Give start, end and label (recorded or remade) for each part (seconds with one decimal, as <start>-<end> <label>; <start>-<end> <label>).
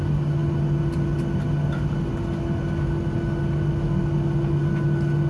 0.0-5.3 recorded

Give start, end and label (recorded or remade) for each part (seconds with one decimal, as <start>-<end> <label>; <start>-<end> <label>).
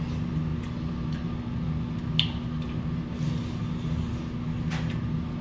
0.0-5.4 recorded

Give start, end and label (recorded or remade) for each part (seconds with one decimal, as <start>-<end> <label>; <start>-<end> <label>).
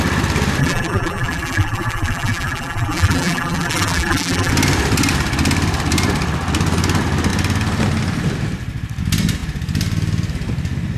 0.0-0.6 recorded; 0.6-4.5 remade; 4.5-11.0 recorded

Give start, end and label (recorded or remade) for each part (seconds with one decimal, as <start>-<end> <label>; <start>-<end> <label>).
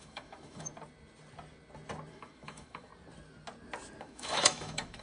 0.0-0.7 remade; 0.7-2.1 recorded; 2.1-2.9 remade; 2.9-4.0 recorded; 4.0-5.0 remade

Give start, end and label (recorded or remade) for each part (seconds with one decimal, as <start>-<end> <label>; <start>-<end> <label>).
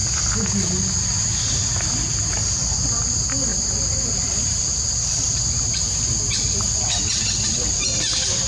0.0-8.5 recorded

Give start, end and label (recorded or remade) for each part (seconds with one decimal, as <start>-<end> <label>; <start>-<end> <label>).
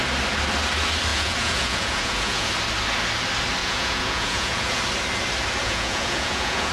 0.0-1.1 recorded; 1.1-2.5 remade; 2.5-3.6 recorded; 3.6-4.8 remade; 4.8-5.6 recorded; 5.6-6.7 remade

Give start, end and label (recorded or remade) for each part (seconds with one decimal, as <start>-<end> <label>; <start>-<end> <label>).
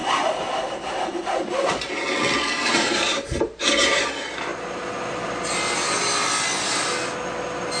0.0-1.5 remade; 1.5-2.7 recorded; 2.7-4.0 remade; 4.0-7.8 recorded